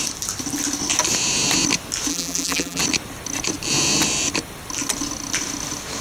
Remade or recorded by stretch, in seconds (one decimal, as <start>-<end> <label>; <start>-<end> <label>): 0.0-2.1 recorded; 2.1-2.8 remade; 2.8-6.0 recorded